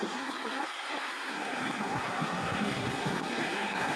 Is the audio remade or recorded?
remade